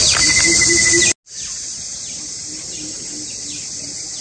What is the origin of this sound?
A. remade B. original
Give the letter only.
B